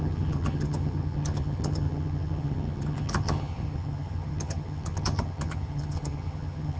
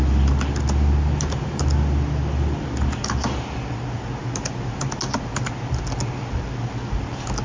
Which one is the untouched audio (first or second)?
second